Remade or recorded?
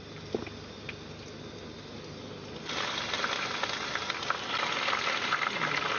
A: recorded